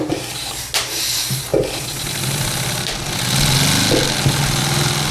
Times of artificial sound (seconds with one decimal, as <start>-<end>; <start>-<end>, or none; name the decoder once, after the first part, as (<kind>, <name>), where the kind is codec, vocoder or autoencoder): none